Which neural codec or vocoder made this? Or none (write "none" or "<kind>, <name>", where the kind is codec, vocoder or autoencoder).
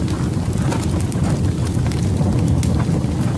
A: none